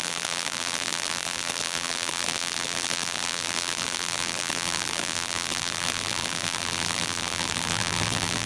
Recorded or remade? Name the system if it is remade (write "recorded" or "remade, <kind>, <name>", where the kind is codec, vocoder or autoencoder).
remade, vocoder, BigVGAN v2